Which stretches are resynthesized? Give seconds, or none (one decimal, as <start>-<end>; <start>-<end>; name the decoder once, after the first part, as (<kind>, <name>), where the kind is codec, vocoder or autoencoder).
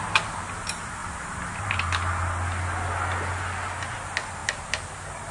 none